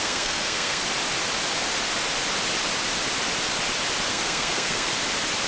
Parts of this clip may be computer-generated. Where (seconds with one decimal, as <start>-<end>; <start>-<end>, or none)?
0.0-0.8; 4.1-4.9